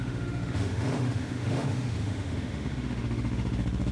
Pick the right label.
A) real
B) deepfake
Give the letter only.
B